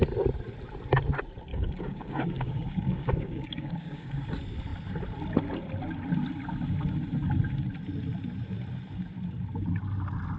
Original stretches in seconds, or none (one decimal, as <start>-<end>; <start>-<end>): 0.0-1.5; 4.3-10.4